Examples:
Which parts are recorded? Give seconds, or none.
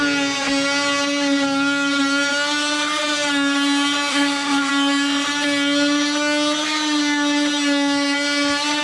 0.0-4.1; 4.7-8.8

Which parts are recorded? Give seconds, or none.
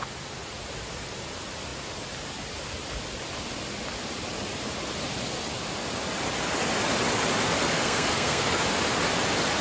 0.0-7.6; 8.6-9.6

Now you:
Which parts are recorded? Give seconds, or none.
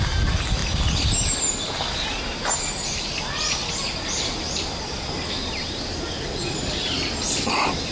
0.0-7.9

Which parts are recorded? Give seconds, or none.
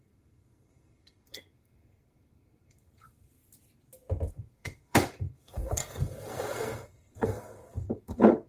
3.4-4.3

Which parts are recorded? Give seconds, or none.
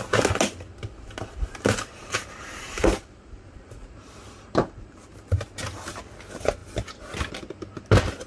0.0-2.0; 6.0-8.3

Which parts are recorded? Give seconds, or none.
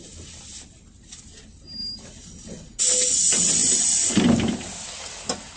0.0-5.6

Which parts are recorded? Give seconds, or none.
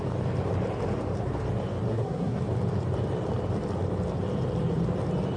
0.0-1.9; 2.4-5.4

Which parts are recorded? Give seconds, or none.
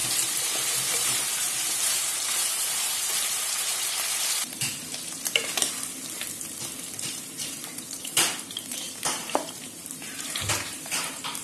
5.5-7.1